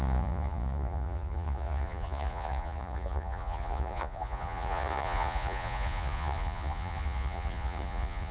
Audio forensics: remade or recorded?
remade